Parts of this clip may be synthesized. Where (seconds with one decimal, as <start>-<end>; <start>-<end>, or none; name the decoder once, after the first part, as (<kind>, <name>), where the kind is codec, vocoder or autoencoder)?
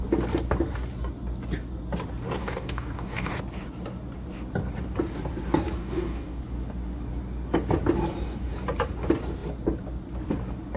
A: 2.4-3.3 (codec, DAC); 5.8-6.4